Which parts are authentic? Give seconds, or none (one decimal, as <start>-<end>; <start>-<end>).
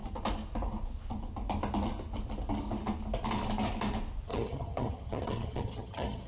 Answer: 0.0-4.3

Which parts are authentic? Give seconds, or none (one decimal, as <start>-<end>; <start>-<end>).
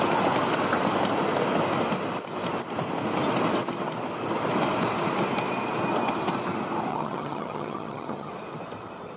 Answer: 0.0-6.9; 8.3-9.2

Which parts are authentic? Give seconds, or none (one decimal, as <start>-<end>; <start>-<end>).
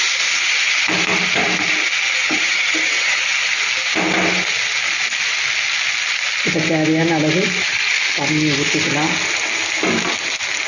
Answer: 0.0-2.2; 3.2-10.7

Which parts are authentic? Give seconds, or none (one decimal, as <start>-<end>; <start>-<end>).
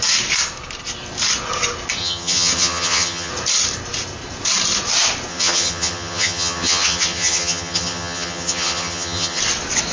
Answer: 0.0-2.0; 3.3-5.3; 9.4-9.9